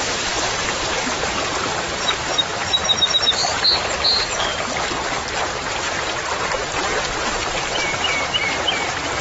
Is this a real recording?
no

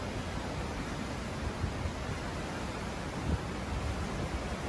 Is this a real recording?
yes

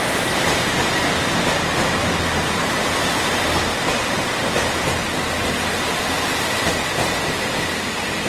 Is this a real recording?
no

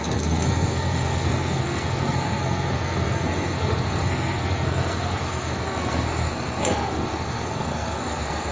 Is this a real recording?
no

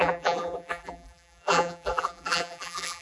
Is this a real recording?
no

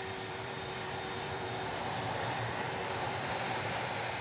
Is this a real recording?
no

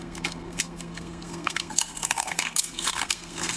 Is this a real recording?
no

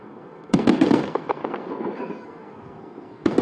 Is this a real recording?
no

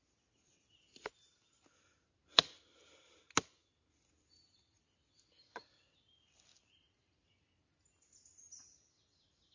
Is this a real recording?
yes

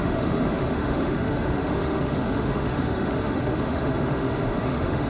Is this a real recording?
no